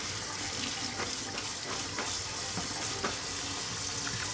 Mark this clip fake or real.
real